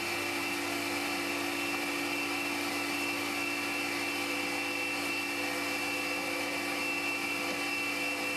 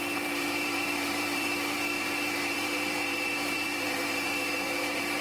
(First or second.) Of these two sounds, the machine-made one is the second